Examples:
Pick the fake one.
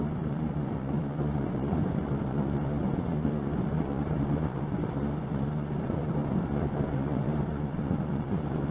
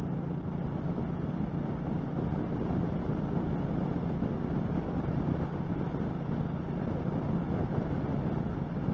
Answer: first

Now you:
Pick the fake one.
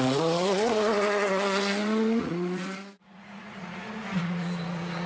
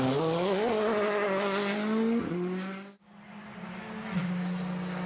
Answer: first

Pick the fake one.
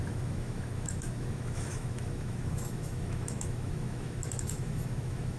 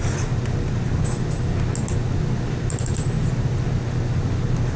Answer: first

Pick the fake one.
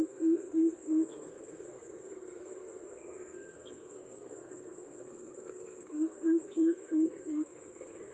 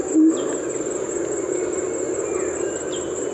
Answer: first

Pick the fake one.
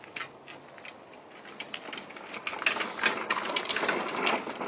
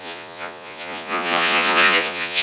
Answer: second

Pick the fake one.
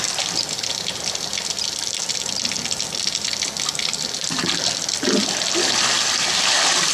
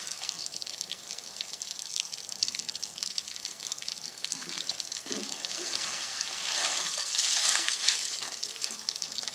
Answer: second